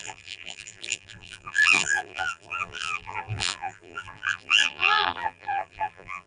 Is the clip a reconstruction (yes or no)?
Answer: yes